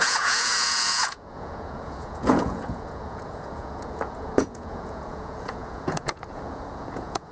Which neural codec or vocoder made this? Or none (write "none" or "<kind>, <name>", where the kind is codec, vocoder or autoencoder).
vocoder, Vocos